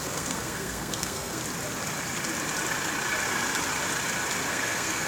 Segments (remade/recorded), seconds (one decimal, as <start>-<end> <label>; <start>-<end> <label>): 0.0-1.4 remade; 1.4-4.5 recorded; 4.5-5.1 remade